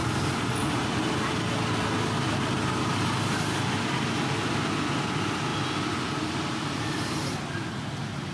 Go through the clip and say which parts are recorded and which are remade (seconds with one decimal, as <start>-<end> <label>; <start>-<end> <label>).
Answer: 0.0-8.3 recorded